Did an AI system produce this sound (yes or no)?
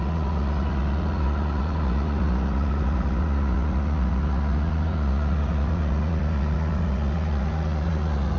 yes